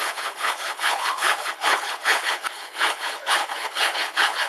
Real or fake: fake